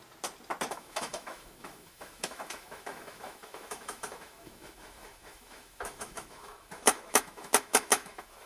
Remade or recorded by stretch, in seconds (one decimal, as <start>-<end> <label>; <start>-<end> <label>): 0.0-0.7 recorded; 0.7-8.5 remade